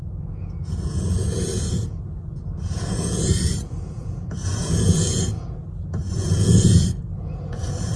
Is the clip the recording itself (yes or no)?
no